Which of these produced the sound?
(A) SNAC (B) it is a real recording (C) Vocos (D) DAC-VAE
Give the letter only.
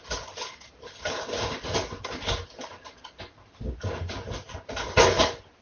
B